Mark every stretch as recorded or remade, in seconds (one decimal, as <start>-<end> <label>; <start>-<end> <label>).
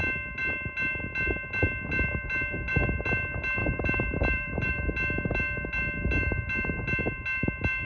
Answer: 0.0-3.6 recorded; 3.6-4.7 remade; 4.7-7.8 recorded